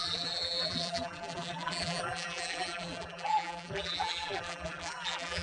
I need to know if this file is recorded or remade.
remade